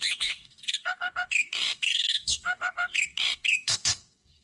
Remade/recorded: remade